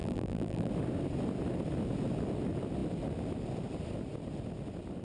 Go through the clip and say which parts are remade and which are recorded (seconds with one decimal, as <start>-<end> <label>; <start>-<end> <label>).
0.0-0.7 remade; 0.7-5.0 recorded